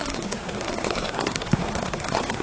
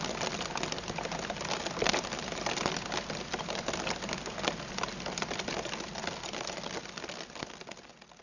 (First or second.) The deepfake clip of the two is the first